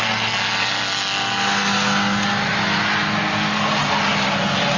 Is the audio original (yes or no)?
yes